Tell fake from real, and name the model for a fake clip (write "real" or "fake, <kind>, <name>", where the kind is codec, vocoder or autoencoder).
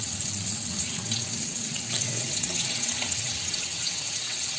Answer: fake, vocoder, WaveNeXt